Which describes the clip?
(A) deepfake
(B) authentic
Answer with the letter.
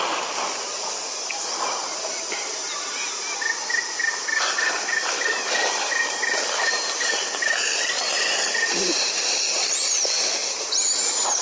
B